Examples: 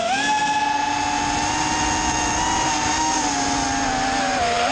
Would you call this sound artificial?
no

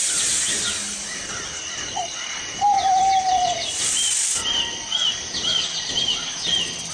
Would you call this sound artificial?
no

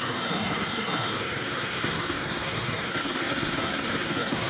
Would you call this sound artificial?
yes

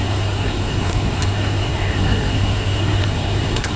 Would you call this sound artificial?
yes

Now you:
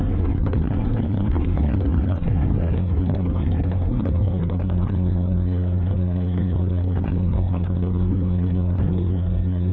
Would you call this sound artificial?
yes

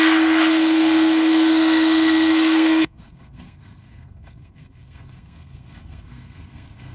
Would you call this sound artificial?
yes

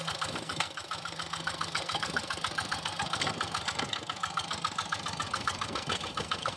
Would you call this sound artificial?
yes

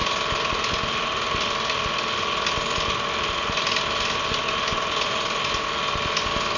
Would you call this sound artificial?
no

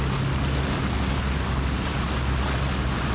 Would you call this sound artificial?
no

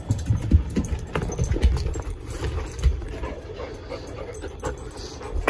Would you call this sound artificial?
no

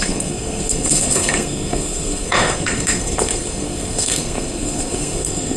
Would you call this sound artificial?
yes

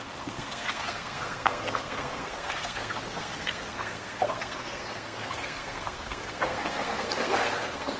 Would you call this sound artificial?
yes